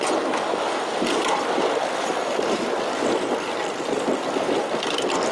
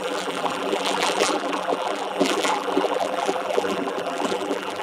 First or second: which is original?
first